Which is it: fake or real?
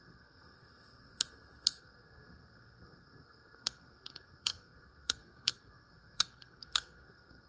fake